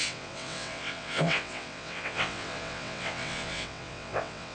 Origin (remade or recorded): remade